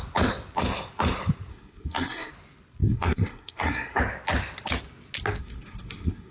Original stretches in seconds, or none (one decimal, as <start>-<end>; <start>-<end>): 0.0-1.5; 2.3-2.8; 4.0-5.4